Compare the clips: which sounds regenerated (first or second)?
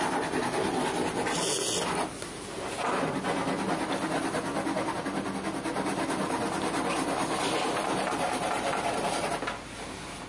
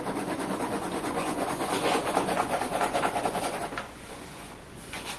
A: second